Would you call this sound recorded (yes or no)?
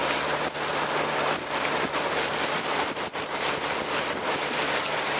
yes